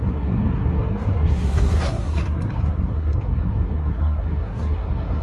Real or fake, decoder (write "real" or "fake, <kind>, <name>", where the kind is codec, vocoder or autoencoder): fake, codec, SNAC